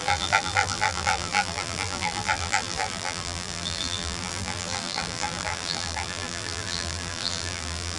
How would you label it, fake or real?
fake